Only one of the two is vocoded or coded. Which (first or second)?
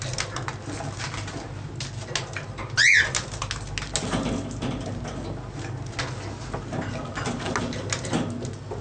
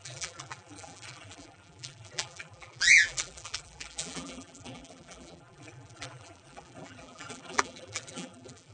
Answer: second